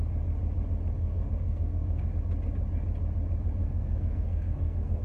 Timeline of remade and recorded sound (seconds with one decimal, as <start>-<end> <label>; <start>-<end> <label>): 0.0-1.0 recorded; 1.0-2.1 remade; 2.1-3.6 recorded; 3.6-5.0 remade